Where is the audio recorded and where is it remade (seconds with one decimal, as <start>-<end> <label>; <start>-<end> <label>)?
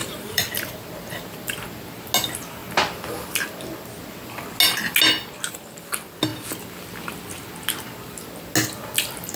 0.0-0.8 remade; 0.8-9.4 recorded